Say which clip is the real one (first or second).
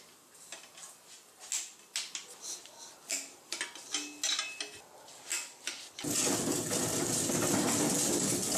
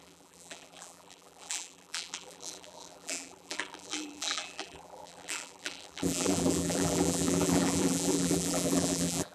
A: first